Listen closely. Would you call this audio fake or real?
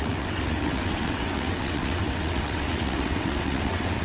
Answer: fake